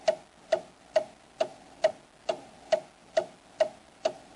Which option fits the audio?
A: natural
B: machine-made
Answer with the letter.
A